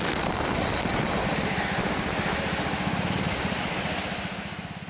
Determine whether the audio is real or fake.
real